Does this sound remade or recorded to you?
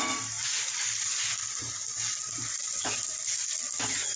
recorded